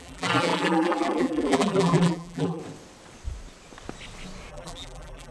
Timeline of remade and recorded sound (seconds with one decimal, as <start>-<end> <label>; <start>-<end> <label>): 0.0-2.6 remade; 2.6-4.5 recorded; 4.5-5.3 remade